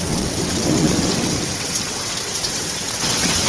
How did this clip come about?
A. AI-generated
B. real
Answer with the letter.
A